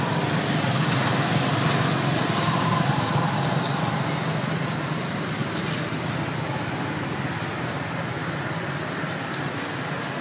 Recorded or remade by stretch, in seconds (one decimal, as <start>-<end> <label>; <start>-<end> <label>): 0.0-10.2 recorded